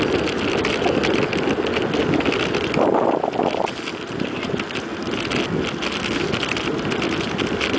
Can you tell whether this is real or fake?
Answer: real